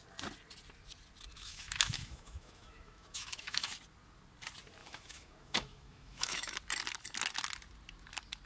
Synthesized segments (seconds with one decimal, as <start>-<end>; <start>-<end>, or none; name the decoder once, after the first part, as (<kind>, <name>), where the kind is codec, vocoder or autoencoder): 1.3-3.7 (autoencoder, DAC-VAE); 4.8-6.5